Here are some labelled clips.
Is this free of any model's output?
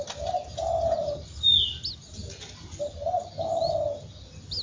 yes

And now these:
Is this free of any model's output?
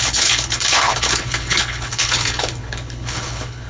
no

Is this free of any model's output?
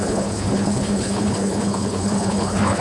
no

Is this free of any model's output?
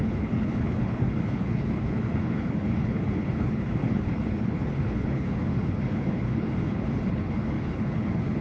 no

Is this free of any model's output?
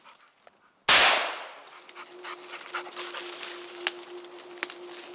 yes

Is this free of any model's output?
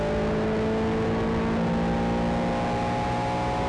yes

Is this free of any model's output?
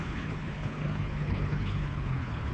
no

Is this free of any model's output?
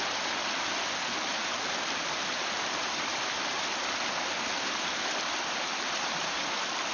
yes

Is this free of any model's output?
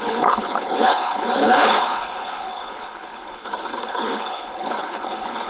no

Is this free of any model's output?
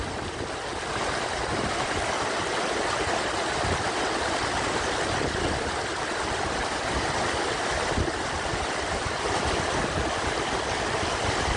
yes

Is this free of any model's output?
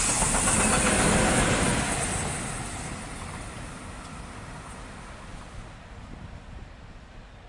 yes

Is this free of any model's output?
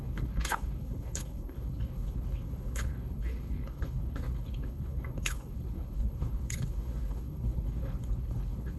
no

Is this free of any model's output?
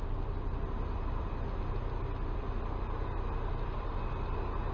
yes